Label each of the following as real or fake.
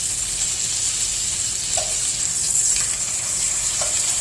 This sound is real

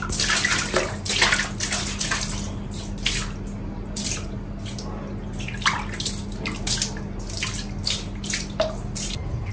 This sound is real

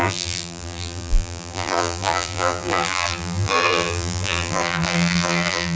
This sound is fake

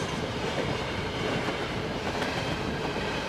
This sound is fake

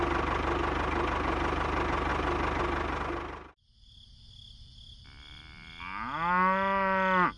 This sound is real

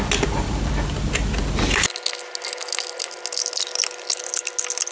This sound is real